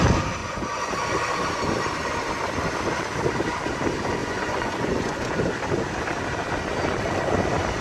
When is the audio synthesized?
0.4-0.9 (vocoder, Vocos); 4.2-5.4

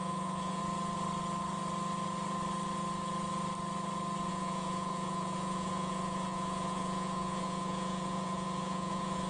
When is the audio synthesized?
0.0-0.6 (vocoder, Vocos); 4.3-9.3

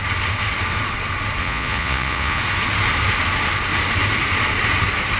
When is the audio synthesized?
1.4-2.4 (vocoder, Vocos)

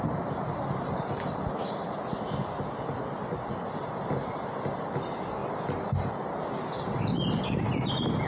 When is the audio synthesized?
none